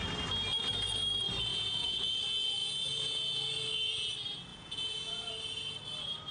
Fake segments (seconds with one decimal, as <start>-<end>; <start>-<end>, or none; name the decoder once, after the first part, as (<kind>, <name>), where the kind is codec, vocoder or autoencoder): 1.5-2.1 (vocoder, Vocos); 2.6-3.4; 4.5-5.3